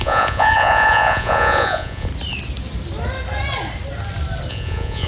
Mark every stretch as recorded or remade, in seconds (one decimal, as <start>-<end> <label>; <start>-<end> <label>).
0.0-2.1 remade; 2.1-4.5 recorded; 4.5-5.1 remade